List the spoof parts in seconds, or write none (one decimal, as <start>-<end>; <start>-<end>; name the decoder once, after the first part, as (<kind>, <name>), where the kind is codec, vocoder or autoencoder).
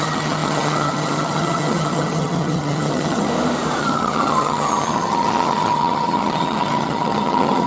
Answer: 0.0-3.3 (vocoder, HiFi-GAN); 3.8-7.7